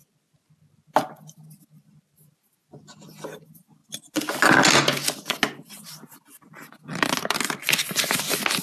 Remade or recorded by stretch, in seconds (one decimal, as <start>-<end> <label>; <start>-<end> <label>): 0.0-8.6 recorded